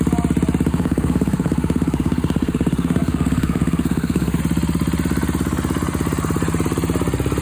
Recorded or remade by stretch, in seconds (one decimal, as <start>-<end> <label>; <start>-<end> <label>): 0.0-0.7 recorded; 0.7-4.4 remade; 4.4-7.4 recorded